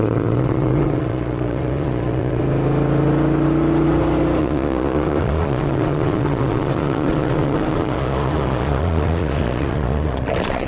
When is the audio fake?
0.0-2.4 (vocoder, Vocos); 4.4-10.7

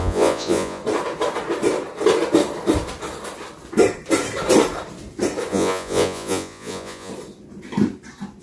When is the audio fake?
0.0-0.8 (vocoder, Vocos); 5.5-7.1

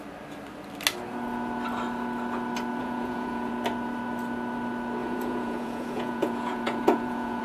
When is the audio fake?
2.8-3.5 (vocoder, Vocos); 5.0-7.4

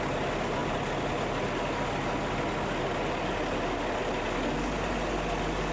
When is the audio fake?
none

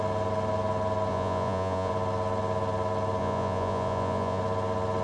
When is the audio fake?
1.1-1.9 (vocoder, Vocos); 3.2-4.4

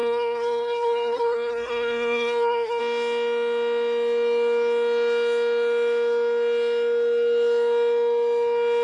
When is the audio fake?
0.0-2.8 (codec, SNAC)

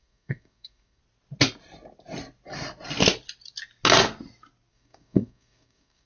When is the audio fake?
0.0-1.0 (codec, SNAC); 4.7-6.1

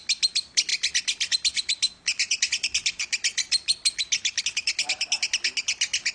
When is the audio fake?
none